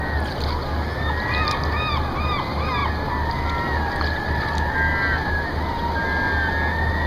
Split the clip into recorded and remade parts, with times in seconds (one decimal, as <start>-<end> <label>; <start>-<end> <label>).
0.0-7.1 recorded